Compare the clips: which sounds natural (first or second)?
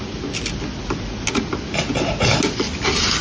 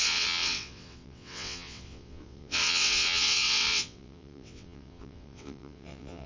first